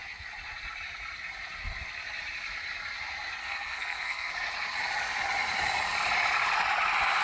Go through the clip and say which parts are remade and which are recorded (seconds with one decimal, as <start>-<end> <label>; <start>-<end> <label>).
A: 0.0-3.4 recorded; 3.4-4.3 remade; 4.3-7.2 recorded